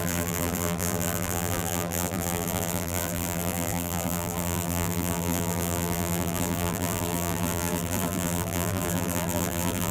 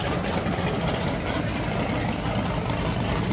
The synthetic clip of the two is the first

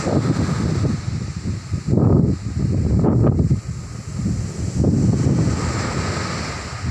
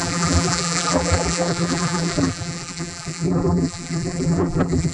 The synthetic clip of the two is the second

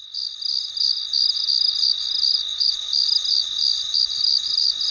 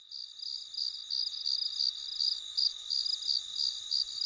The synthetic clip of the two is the first